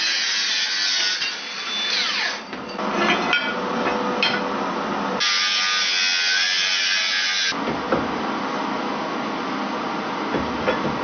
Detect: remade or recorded recorded